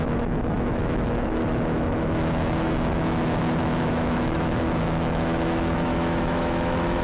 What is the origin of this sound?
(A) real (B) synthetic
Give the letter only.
B